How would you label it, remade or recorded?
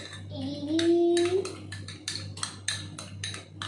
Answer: recorded